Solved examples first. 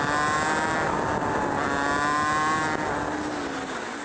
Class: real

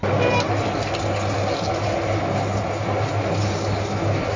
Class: real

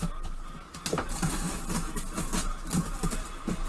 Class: real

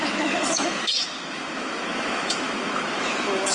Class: fake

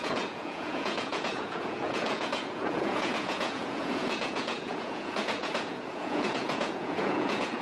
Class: fake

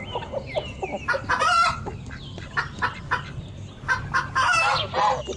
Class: real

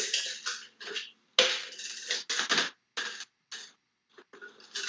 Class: real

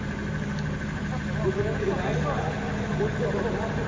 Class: real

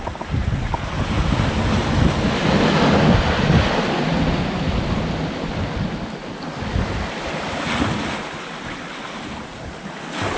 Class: real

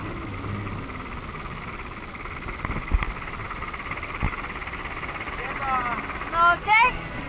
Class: real